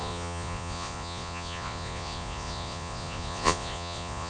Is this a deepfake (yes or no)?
yes